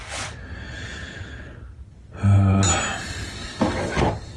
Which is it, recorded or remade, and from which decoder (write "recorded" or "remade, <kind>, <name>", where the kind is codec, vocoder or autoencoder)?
recorded